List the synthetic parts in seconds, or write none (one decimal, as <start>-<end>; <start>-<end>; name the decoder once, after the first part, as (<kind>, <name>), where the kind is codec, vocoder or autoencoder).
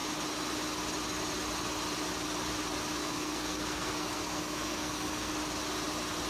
3.0-5.3 (codec, SNAC)